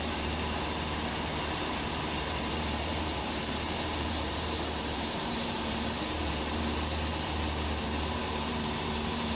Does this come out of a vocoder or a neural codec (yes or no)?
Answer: yes